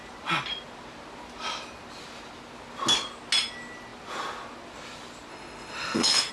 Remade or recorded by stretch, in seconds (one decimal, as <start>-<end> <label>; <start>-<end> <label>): 0.0-5.3 recorded; 5.3-6.3 remade

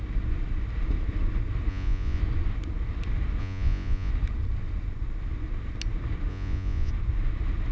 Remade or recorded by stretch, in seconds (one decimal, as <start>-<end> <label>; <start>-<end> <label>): 0.0-1.7 recorded; 1.7-2.2 remade; 2.2-3.4 recorded; 3.4-4.1 remade; 4.1-6.3 recorded; 6.3-6.9 remade; 6.9-7.7 recorded